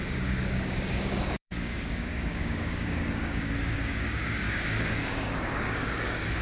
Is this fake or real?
fake